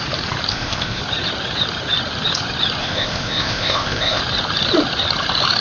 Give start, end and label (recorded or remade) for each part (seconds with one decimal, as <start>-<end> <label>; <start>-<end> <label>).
0.0-0.5 recorded; 0.5-1.0 remade; 1.0-2.8 recorded; 2.8-4.2 remade; 4.2-5.6 recorded